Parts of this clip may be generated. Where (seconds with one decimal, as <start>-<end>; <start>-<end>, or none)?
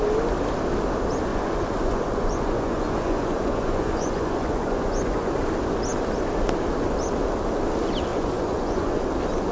1.3-5.3; 8.1-9.0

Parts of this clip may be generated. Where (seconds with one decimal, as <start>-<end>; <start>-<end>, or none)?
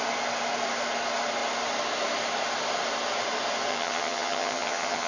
3.7-5.1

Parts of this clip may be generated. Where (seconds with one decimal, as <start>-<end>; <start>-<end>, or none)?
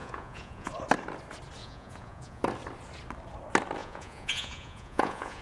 0.0-0.7; 1.6-2.4; 3.8-5.4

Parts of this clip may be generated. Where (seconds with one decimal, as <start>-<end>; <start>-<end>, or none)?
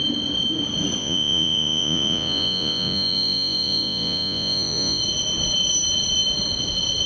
1.0-5.0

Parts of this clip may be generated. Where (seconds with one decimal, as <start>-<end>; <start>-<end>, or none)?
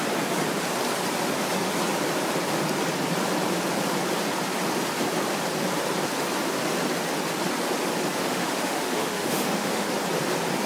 8.2-9.9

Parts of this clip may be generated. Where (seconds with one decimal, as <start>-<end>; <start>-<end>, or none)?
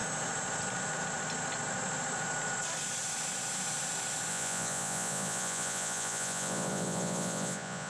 4.3-7.9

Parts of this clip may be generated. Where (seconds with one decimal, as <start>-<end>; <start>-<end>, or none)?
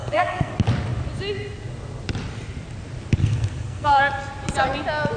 0.0-0.5; 3.2-4.0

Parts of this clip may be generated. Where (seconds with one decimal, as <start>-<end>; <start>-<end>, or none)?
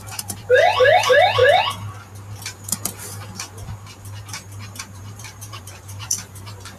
0.0-1.4; 4.8-6.8